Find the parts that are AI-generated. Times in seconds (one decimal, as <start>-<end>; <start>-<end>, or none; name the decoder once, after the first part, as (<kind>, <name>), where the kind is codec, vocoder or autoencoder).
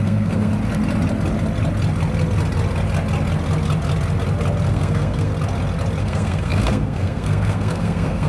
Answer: 0.0-0.5 (codec, SNAC); 4.7-5.3; 6.0-8.3